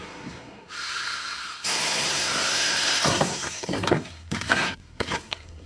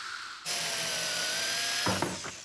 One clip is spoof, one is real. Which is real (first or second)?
second